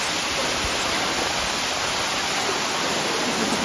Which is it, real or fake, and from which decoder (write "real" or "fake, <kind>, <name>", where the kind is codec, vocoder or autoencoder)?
real